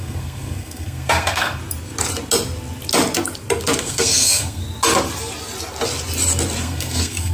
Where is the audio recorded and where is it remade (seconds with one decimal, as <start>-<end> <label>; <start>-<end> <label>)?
0.0-1.6 remade; 1.6-3.8 recorded; 3.8-4.6 remade; 4.6-6.6 recorded; 6.6-7.3 remade